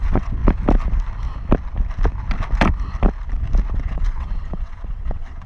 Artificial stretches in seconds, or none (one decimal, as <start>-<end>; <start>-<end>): 0.0-0.4; 3.7-5.5